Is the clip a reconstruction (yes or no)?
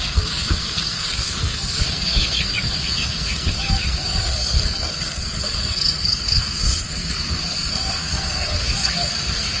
yes